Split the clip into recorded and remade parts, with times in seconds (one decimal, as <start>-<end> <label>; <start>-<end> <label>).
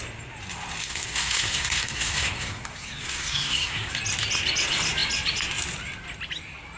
0.0-0.8 recorded; 0.8-3.9 remade; 3.9-6.8 recorded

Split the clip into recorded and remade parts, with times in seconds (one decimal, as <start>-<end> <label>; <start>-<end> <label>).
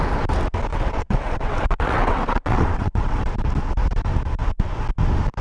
0.0-0.7 recorded; 0.7-3.2 remade; 3.2-5.4 recorded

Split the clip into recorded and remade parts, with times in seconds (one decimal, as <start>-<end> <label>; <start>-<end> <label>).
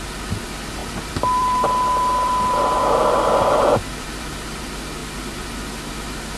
0.0-0.8 recorded; 0.8-4.6 remade; 4.6-6.4 recorded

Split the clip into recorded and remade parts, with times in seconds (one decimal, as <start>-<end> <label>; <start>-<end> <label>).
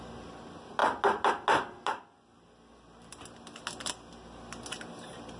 0.0-5.4 recorded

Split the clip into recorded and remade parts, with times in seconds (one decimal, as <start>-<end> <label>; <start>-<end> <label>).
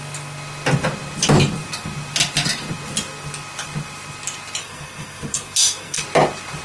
0.0-4.6 recorded; 4.6-6.0 remade; 6.0-6.6 recorded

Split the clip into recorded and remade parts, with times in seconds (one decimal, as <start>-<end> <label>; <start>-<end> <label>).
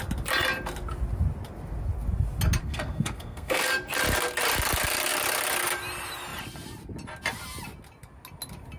0.0-2.6 recorded; 2.6-3.6 remade; 3.6-8.8 recorded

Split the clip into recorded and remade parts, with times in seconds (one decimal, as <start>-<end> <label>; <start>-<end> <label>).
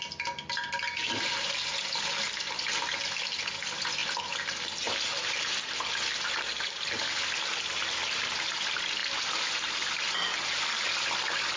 0.0-11.6 recorded